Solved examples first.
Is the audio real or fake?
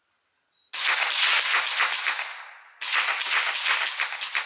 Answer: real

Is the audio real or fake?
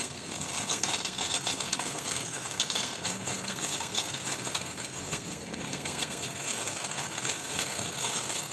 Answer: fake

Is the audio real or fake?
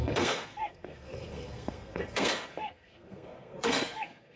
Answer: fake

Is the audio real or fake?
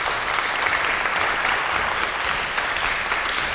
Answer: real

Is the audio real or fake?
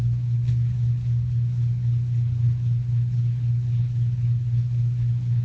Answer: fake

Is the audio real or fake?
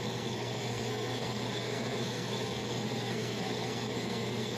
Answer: fake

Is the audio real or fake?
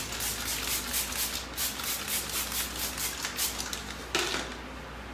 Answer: real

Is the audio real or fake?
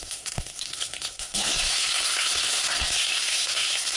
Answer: fake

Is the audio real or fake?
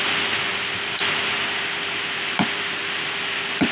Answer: real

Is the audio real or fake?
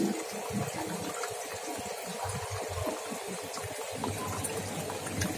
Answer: real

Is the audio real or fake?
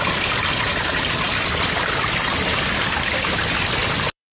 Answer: fake